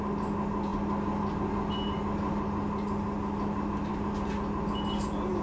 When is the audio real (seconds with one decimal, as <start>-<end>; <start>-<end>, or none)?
0.0-5.4

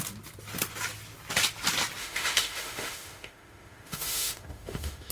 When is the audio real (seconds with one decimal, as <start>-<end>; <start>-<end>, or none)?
0.0-2.0

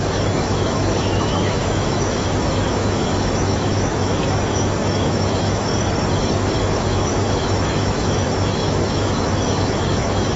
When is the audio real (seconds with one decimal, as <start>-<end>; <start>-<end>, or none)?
5.7-6.6

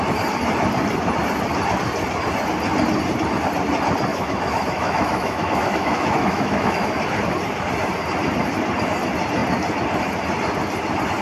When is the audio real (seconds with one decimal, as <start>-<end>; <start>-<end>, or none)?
0.0-4.1; 7.0-11.2